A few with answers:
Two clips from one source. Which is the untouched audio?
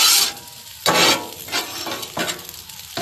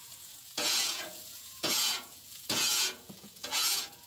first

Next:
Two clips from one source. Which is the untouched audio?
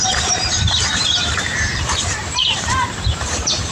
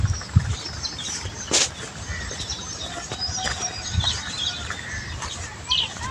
second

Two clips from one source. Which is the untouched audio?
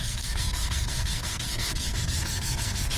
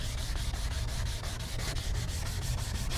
second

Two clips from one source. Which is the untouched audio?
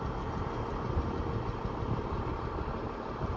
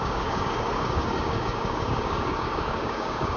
first